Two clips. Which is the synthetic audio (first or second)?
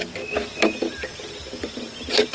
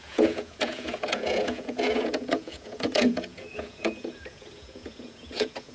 second